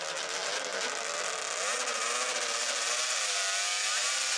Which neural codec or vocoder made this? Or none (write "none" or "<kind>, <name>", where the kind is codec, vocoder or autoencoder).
none